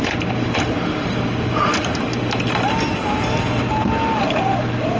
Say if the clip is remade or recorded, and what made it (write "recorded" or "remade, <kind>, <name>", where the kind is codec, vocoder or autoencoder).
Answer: recorded